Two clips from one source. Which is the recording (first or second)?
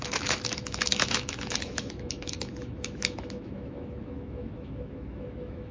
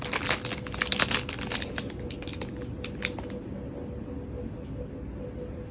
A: second